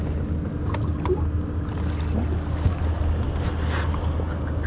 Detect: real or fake real